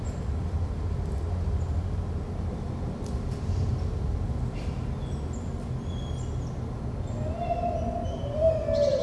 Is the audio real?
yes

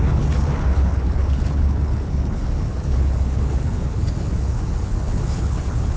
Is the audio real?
no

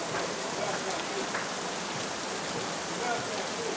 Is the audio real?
yes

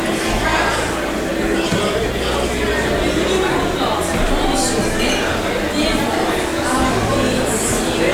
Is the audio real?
yes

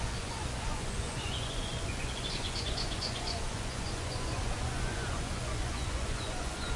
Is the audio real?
no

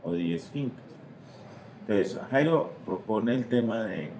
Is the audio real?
no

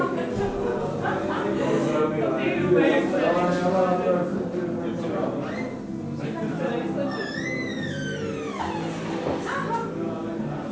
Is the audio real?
yes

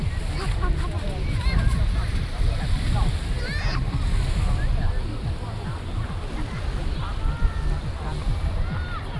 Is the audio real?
yes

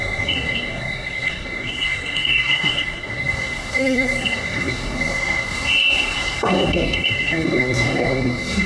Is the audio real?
no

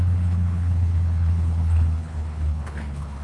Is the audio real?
no